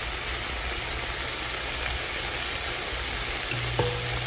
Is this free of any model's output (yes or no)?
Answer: yes